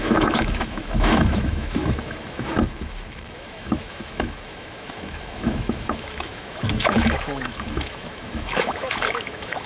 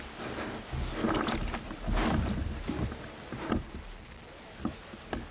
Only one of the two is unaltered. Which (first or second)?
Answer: second